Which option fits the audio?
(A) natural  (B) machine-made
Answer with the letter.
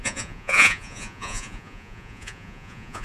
B